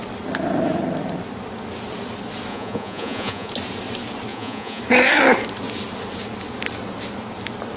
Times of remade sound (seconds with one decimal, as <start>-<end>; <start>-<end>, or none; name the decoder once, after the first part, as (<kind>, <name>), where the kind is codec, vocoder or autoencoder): 2.5-3.5 (vocoder, Vocos); 4.3-4.8